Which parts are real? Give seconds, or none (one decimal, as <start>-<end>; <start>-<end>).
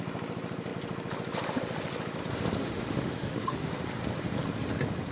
0.0-2.6; 3.7-5.1